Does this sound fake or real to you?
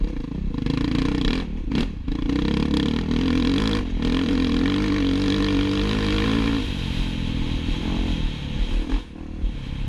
real